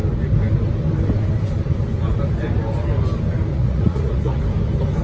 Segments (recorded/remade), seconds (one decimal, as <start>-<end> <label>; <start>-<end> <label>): 0.0-3.5 recorded; 3.5-4.4 remade; 4.4-5.0 recorded